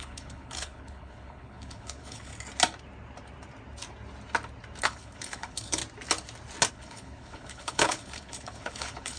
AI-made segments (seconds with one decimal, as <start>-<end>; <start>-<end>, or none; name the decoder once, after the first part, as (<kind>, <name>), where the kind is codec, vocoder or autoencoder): 0.0-2.3 (codec, HILCodec); 4.8-5.8; 6.7-9.2